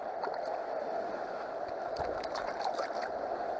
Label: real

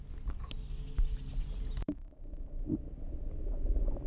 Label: real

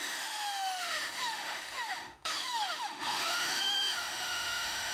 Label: fake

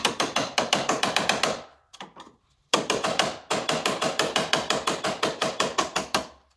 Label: real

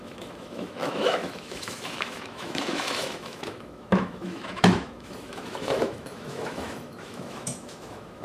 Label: fake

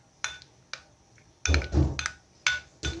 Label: real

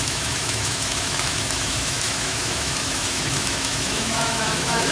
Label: fake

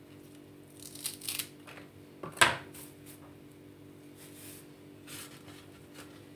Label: real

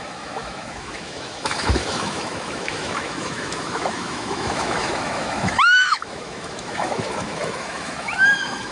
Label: fake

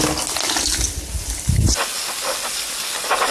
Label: real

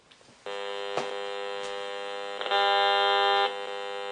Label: real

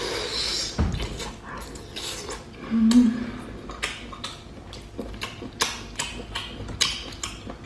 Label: real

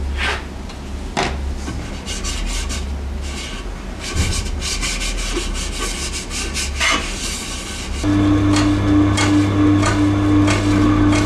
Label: real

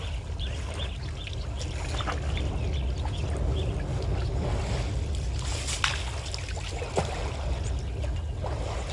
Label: real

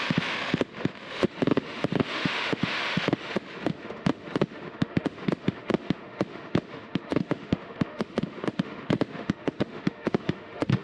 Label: fake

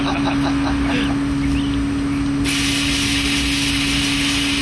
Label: real